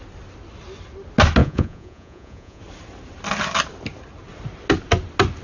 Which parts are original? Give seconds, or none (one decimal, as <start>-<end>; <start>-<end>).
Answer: 0.0-1.4; 2.6-5.4